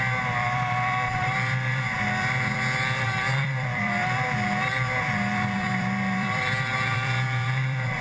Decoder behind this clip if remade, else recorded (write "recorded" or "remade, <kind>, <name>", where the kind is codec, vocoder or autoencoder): remade, vocoder, BigVGAN v2